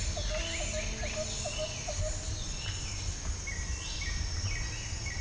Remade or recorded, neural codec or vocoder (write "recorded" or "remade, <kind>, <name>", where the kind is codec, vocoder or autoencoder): recorded